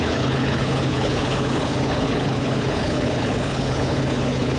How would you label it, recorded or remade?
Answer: remade